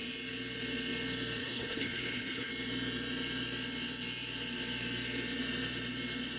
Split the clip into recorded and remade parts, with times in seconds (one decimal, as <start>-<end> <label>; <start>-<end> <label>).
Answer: 0.0-1.4 recorded; 1.4-2.5 remade; 2.5-6.4 recorded